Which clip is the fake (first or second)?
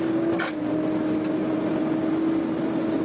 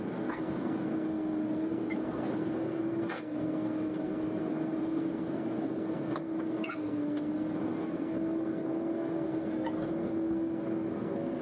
second